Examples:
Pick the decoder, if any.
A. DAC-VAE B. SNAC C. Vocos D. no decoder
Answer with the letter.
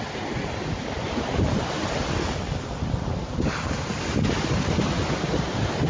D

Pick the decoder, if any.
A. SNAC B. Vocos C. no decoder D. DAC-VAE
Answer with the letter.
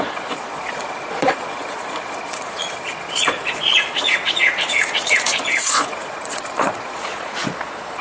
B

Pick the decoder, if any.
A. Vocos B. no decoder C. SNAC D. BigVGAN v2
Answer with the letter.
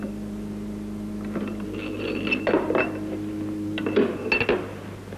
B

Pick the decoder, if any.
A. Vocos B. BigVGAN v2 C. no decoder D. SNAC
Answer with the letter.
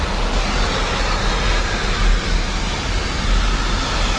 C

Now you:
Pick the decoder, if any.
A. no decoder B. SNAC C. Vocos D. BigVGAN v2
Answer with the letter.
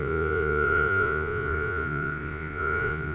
C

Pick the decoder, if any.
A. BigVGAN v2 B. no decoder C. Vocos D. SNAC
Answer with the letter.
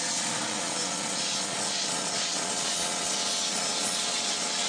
C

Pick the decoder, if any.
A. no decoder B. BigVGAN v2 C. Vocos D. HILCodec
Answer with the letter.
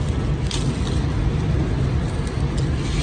A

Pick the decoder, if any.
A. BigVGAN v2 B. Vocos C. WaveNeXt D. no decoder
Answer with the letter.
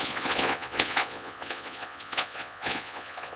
B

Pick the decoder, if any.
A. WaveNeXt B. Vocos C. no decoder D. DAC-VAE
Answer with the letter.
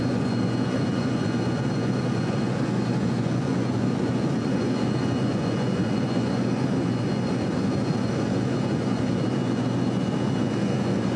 B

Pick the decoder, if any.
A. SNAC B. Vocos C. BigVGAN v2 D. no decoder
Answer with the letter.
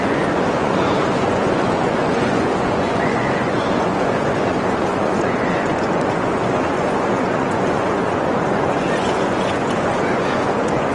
B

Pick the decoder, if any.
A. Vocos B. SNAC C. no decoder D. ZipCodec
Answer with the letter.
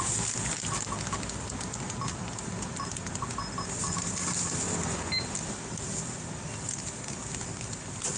C